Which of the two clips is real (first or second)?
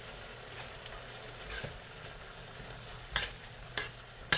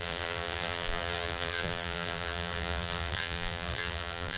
first